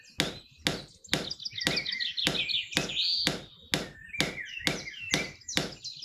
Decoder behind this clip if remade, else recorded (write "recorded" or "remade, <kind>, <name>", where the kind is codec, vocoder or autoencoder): recorded